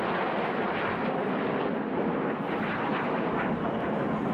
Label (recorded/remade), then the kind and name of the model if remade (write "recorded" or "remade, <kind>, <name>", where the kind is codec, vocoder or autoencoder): recorded